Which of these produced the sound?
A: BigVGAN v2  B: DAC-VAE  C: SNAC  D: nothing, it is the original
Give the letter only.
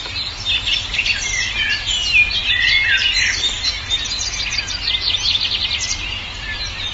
D